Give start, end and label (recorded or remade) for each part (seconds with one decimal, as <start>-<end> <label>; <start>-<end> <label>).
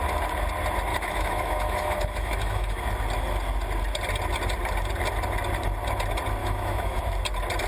0.0-0.9 recorded; 0.9-2.8 remade; 2.8-6.4 recorded; 6.4-7.0 remade; 7.0-7.7 recorded